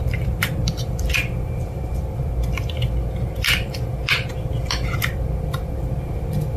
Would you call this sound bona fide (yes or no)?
no